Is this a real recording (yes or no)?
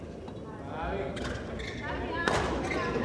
yes